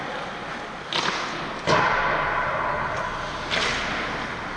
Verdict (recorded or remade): recorded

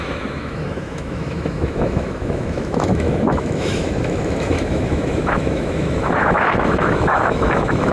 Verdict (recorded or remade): remade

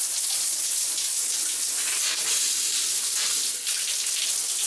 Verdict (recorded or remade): recorded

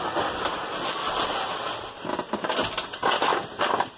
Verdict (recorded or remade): recorded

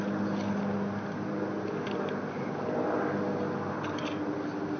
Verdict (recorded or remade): recorded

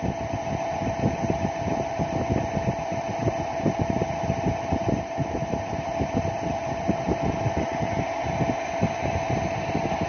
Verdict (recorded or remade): recorded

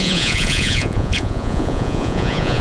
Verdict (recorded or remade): remade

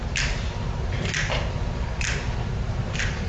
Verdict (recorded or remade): remade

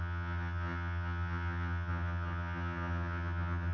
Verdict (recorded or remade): remade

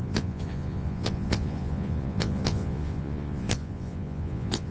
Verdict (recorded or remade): remade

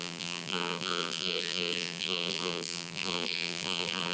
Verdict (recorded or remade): remade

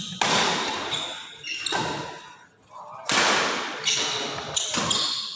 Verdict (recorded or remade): recorded